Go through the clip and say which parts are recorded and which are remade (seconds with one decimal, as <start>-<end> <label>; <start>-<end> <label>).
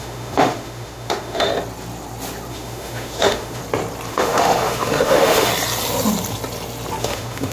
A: 0.0-1.5 remade; 1.5-2.5 recorded; 2.5-3.6 remade; 3.6-4.1 recorded; 4.1-5.5 remade; 5.5-7.0 recorded; 7.0-7.5 remade